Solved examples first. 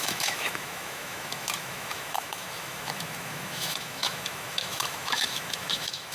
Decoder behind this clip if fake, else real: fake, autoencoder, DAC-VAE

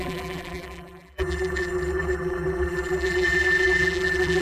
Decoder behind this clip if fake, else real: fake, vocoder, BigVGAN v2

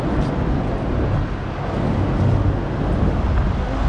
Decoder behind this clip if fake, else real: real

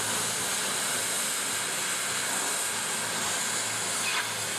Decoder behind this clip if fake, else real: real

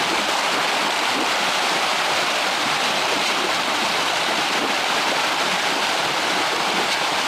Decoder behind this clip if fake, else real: fake, vocoder, BigVGAN v2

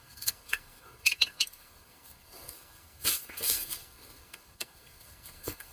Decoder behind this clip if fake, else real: fake, codec, SNAC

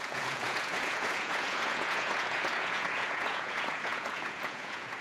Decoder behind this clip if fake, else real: fake, vocoder, Vocos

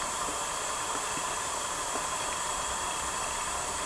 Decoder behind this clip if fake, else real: fake, vocoder, BigVGAN v2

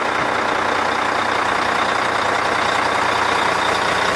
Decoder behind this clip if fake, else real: real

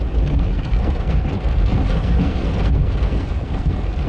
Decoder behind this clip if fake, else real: fake, codec, SNAC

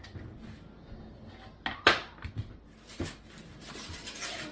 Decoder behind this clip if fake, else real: real